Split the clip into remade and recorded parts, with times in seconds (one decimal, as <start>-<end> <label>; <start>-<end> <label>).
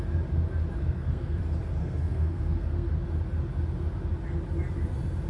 0.0-0.8 recorded; 0.8-1.4 remade; 1.4-1.8 recorded; 1.8-2.9 remade; 2.9-5.3 recorded